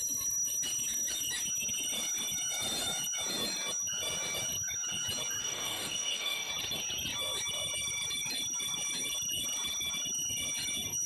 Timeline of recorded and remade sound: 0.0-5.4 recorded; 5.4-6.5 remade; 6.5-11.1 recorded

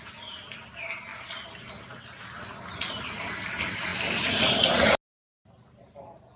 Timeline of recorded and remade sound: 0.0-6.4 recorded

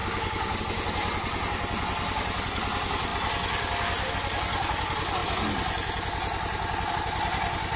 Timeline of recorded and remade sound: 0.0-0.6 remade; 0.6-7.8 recorded